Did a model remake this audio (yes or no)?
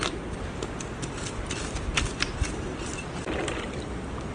no